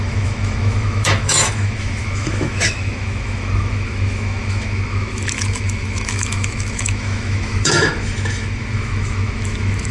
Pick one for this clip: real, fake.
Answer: fake